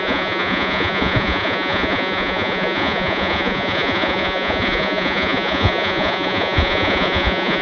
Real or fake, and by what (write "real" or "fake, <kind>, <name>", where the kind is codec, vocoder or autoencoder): fake, vocoder, Vocos